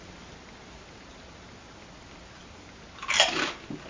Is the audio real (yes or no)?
yes